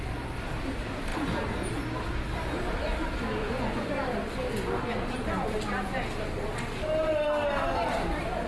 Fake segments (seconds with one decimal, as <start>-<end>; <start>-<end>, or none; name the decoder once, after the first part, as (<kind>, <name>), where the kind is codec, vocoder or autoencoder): 3.4-3.9 (vocoder, Vocos)